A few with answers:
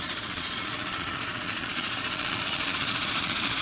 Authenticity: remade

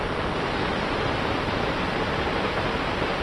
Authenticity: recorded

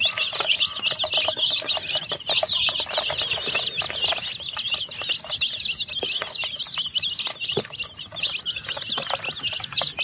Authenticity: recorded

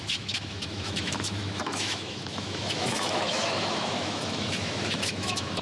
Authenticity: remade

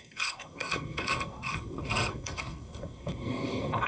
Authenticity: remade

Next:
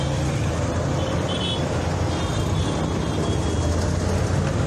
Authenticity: recorded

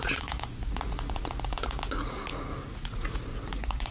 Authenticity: remade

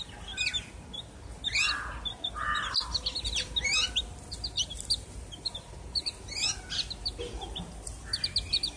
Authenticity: recorded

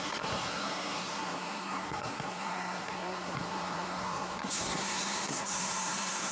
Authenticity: remade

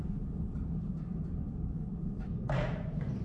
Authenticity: remade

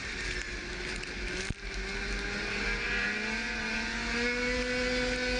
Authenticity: recorded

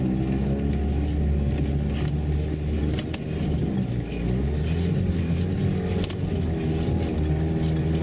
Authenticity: recorded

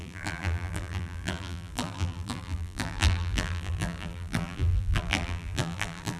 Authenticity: remade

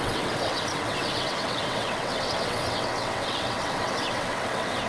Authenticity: remade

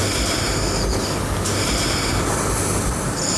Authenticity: recorded